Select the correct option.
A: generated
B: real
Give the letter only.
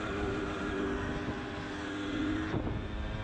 B